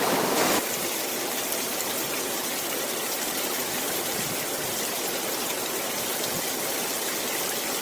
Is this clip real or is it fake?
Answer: fake